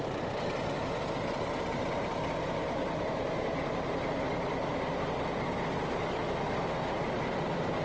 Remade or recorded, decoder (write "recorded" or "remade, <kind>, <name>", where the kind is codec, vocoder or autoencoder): recorded